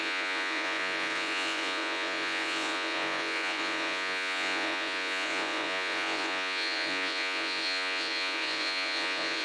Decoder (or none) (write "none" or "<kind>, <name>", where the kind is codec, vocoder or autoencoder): vocoder, Vocos